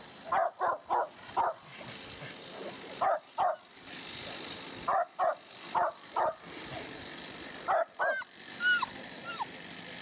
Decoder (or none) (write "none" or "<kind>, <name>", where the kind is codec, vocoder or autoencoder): none